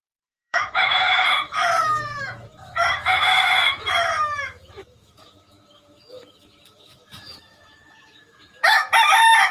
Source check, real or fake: fake